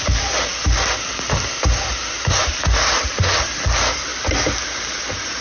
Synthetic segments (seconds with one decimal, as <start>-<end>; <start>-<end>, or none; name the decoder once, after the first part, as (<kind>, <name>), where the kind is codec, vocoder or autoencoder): none